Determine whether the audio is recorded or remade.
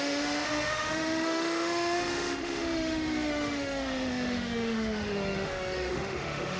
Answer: remade